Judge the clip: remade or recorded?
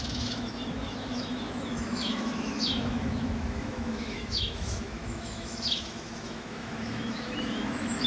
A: remade